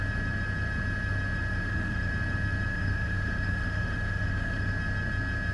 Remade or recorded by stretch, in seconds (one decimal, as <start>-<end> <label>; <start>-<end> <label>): 0.0-1.5 recorded; 1.5-2.1 remade; 2.1-2.7 recorded; 2.7-4.7 remade; 4.7-5.5 recorded